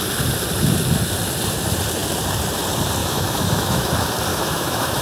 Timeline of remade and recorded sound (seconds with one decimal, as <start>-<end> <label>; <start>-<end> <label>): 0.0-3.0 recorded; 3.0-3.9 remade; 3.9-4.3 recorded; 4.3-5.0 remade